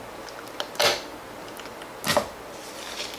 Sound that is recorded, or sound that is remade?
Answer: recorded